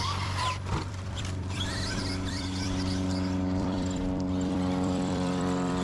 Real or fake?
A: fake